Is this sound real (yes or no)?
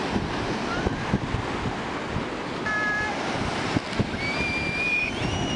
yes